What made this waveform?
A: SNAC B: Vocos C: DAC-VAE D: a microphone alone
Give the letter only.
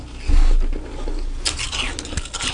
D